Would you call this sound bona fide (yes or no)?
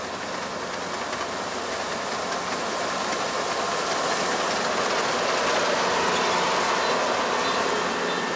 yes